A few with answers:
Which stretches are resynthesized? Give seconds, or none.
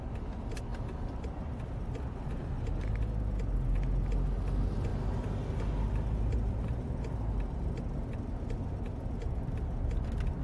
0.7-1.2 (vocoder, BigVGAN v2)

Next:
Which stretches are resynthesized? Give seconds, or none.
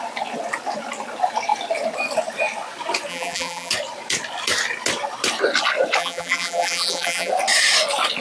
3.1-3.7 (vocoder, BigVGAN v2); 6.0-7.3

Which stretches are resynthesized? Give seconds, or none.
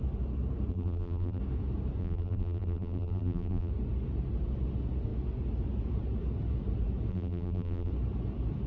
0.7-1.4 (vocoder, BigVGAN v2); 2.0-3.7; 7.1-7.9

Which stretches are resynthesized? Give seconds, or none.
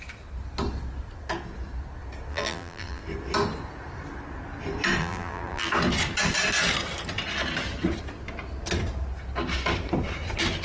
2.3-3.0 (vocoder, BigVGAN v2); 5.0-5.7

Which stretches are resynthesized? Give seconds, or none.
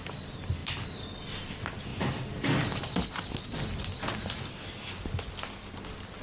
none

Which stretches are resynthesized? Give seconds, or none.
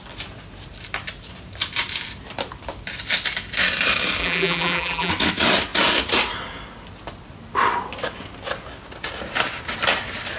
4.2-5.1 (vocoder, BigVGAN v2)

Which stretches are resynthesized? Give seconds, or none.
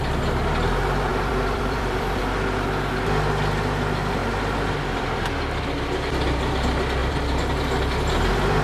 1.1-2.2 (vocoder, BigVGAN v2); 4.2-5.6; 7.0-7.6